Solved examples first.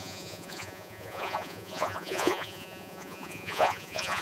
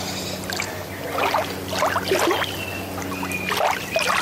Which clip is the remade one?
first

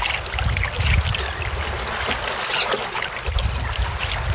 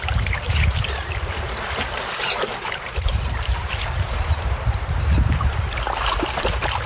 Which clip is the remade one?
second